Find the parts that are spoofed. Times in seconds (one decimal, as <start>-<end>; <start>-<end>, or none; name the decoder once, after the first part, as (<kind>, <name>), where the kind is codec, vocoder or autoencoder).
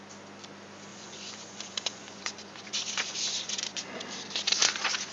0.9-4.0 (vocoder, Vocos); 4.6-5.1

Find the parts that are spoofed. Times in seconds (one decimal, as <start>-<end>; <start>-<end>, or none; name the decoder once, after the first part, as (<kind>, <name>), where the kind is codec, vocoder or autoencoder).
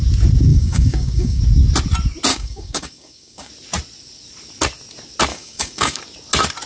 0.5-1.4 (codec, DAC); 2.3-3.5; 5.3-6.0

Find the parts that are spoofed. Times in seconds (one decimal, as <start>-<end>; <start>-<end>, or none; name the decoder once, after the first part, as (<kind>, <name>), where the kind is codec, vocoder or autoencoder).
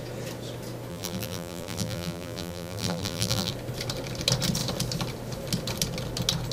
0.9-3.5 (vocoder, BigVGAN v2)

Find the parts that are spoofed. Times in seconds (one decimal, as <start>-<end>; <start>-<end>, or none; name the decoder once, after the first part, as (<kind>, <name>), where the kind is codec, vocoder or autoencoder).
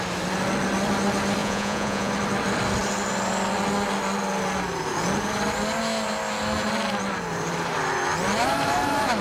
1.4-2.1 (vocoder, Vocos)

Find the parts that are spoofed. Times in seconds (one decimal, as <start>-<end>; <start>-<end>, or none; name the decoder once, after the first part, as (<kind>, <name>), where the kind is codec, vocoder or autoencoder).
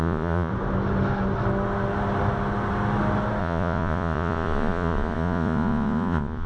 0.0-0.5 (vocoder, Vocos); 3.4-6.5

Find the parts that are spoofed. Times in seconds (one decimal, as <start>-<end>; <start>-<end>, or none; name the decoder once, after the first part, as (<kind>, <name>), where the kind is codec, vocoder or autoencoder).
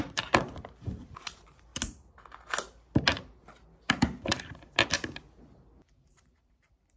0.0-1.7 (vocoder, BigVGAN v2); 5.9-7.0